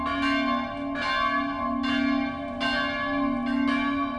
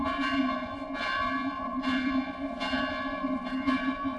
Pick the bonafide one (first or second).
first